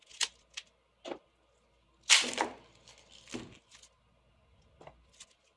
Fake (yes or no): no